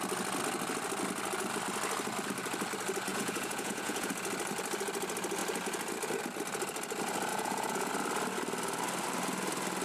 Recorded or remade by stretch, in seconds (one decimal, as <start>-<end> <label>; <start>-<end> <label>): 0.0-3.1 recorded; 3.1-4.1 remade; 4.1-7.3 recorded; 7.3-7.9 remade; 7.9-9.8 recorded